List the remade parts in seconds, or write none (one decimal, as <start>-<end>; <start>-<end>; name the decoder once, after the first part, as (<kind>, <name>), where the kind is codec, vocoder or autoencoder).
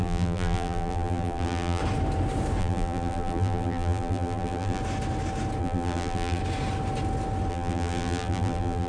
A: 0.0-1.8 (vocoder, BigVGAN v2); 2.6-4.8; 5.6-6.4; 7.5-8.9